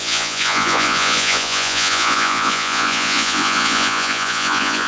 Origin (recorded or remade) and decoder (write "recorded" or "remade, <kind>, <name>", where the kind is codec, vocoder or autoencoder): remade, vocoder, Vocos